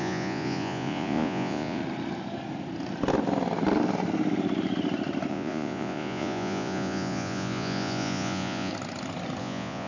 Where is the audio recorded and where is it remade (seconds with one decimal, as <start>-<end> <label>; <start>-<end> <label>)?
0.0-1.8 remade; 1.8-5.3 recorded; 5.3-8.7 remade; 8.7-9.4 recorded; 9.4-9.9 remade